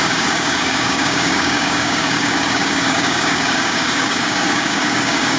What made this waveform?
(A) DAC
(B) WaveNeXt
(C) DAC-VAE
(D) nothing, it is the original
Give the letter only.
A